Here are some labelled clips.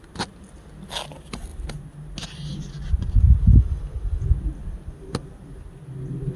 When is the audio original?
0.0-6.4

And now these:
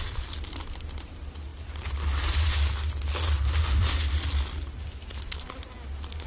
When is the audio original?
0.0-6.3

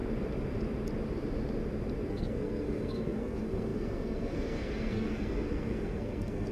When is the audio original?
0.0-2.1